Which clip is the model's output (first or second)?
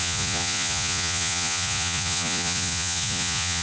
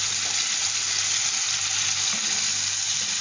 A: first